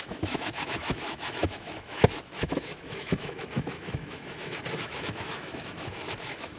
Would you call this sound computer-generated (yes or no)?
yes